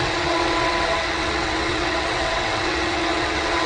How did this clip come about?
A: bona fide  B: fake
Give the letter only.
B